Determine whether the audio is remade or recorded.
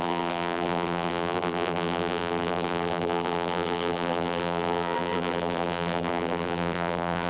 remade